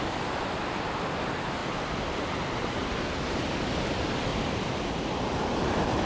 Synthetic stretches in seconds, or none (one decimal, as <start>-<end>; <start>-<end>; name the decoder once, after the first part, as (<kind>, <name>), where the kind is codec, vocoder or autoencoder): 1.6-2.4 (vocoder, BigVGAN v2); 2.8-3.5; 4.3-6.1